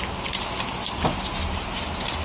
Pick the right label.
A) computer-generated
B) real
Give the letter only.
B